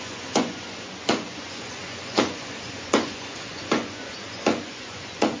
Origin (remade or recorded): remade